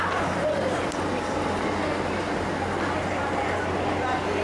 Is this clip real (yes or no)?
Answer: yes